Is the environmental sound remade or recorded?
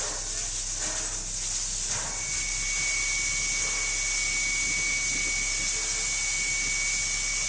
recorded